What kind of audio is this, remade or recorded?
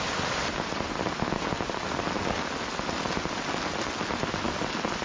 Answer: recorded